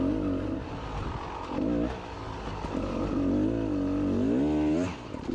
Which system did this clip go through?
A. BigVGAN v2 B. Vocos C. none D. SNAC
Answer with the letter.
C